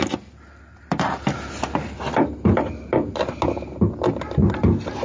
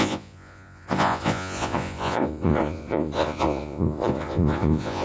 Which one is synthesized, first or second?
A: second